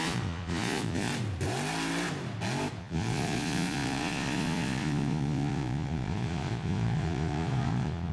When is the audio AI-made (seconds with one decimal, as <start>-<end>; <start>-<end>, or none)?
0.0-1.1; 2.8-8.1